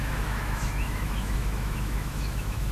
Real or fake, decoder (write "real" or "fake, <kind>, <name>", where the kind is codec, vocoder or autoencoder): fake, autoencoder, DAC-VAE